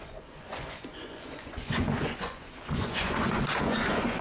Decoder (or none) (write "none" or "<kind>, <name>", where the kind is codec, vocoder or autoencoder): vocoder, Vocos